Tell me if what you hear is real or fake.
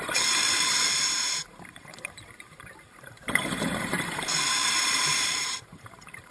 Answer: fake